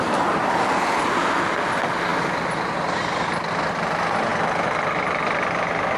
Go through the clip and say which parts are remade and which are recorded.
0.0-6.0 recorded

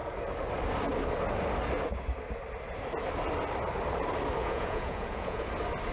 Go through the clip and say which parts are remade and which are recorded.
0.0-4.4 recorded; 4.4-5.5 remade; 5.5-5.9 recorded

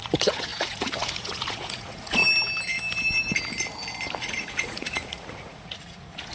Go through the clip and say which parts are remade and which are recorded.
0.0-2.2 remade; 2.2-4.2 recorded; 4.2-6.3 remade

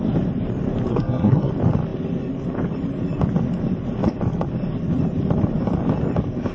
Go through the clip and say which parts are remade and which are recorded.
0.0-0.9 recorded; 0.9-1.5 remade; 1.5-6.5 recorded

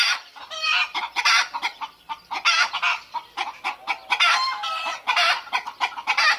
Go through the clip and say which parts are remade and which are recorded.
0.0-2.6 remade; 2.6-6.4 recorded

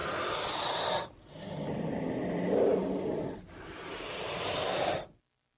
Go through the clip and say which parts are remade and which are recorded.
0.0-5.6 recorded

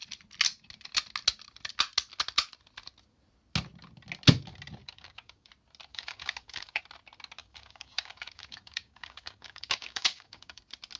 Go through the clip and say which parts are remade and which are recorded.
0.0-4.8 recorded; 4.8-5.5 remade; 5.5-5.9 recorded; 5.9-6.8 remade; 6.8-7.4 recorded; 7.4-10.6 remade; 10.6-11.0 recorded